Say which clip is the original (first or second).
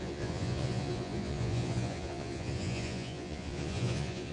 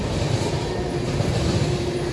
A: second